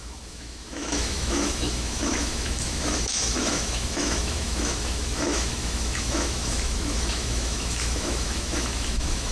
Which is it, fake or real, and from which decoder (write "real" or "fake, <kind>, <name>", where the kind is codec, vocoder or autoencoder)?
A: fake, autoencoder, DAC-VAE